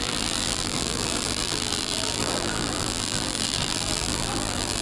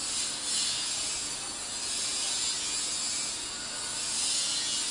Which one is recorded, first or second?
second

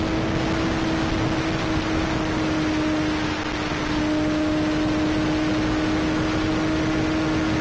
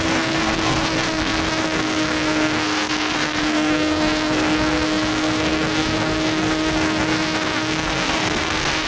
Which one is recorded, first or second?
first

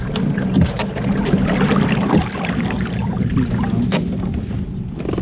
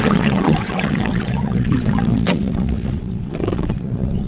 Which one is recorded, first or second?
first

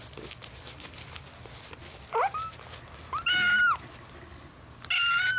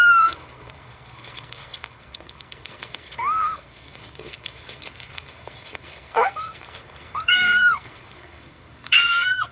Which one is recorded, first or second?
first